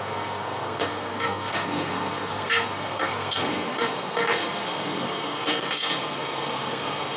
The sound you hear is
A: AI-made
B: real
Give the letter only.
A